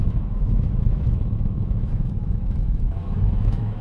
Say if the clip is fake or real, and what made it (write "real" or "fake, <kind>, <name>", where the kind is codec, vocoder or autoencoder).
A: fake, autoencoder, DAC-VAE